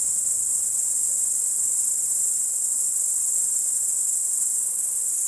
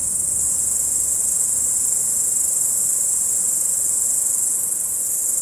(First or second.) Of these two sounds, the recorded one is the first